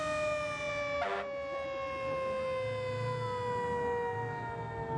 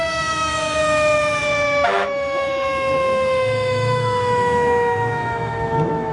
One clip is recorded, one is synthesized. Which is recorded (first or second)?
first